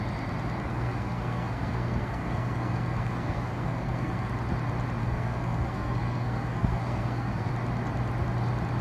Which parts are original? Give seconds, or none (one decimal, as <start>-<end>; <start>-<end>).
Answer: 0.0-0.7; 4.3-5.0; 7.5-8.8